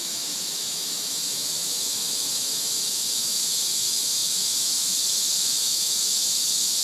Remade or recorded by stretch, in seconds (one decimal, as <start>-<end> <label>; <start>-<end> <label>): 0.0-6.8 remade